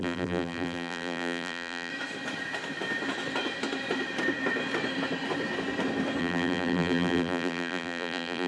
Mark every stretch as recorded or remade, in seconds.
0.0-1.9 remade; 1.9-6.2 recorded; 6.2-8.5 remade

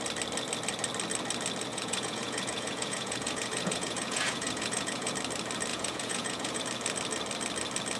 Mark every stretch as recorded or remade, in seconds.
0.0-1.7 recorded; 1.7-5.1 remade; 5.1-5.7 recorded; 5.7-6.6 remade; 6.6-8.0 recorded

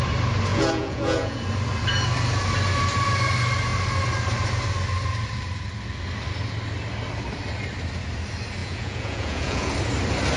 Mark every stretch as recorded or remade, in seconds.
0.0-0.5 recorded; 0.5-1.4 remade; 1.4-8.6 recorded; 8.6-9.7 remade; 9.7-10.4 recorded

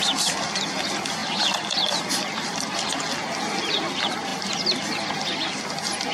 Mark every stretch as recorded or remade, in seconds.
0.0-6.1 recorded

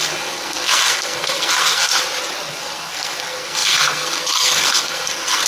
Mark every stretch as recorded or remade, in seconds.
0.0-1.9 remade; 1.9-2.5 recorded; 2.5-5.5 remade

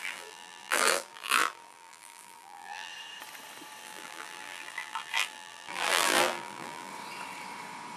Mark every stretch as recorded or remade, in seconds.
0.0-2.9 remade; 2.9-3.8 recorded; 3.8-6.9 remade; 6.9-8.0 recorded

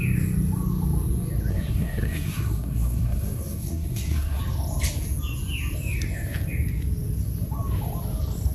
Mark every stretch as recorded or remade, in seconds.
0.0-1.5 recorded; 1.5-4.4 remade; 4.4-8.5 recorded